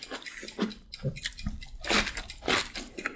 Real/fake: fake